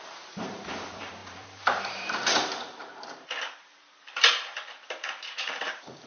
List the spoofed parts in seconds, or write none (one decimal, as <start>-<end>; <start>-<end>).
0.0-6.1